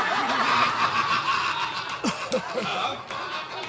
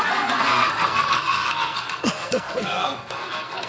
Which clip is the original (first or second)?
first